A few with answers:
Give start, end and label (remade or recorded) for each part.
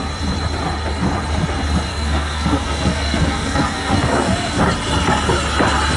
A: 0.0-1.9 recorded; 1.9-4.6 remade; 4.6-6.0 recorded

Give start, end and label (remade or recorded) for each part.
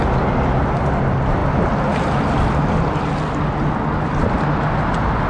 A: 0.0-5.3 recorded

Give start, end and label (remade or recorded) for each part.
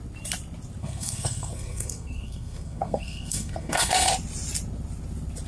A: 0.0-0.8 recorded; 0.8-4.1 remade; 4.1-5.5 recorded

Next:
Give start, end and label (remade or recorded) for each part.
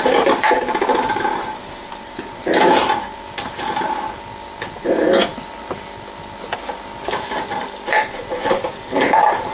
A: 0.0-2.4 remade; 2.4-4.8 recorded; 4.8-5.3 remade; 5.3-7.9 recorded; 7.9-9.5 remade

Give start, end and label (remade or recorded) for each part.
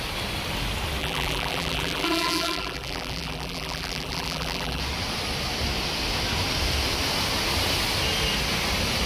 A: 0.0-1.0 recorded; 1.0-4.8 remade; 4.8-9.1 recorded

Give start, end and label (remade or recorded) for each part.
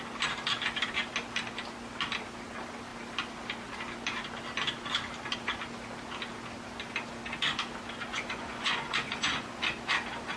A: 0.0-8.1 recorded; 8.1-9.5 remade; 9.5-10.4 recorded